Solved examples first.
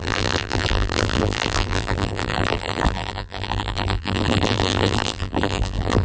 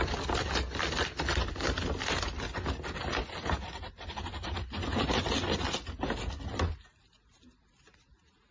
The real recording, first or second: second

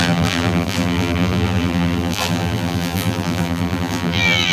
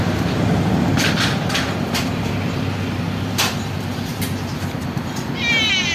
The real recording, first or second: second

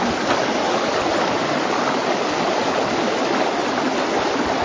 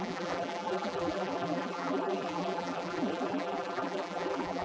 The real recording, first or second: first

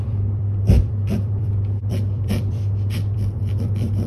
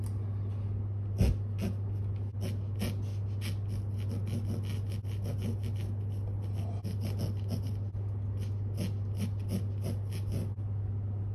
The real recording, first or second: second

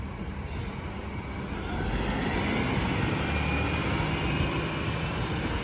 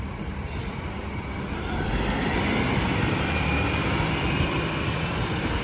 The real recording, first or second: first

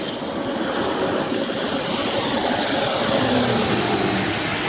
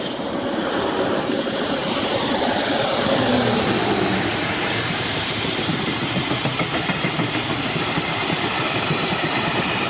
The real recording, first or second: first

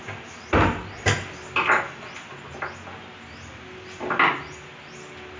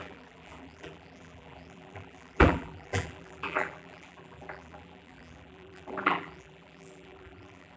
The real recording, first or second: first